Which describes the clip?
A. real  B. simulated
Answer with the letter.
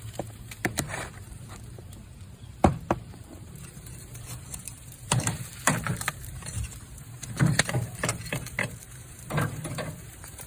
B